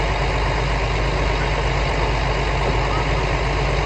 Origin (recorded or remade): recorded